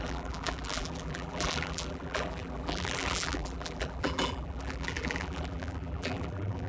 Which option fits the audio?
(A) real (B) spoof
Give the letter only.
B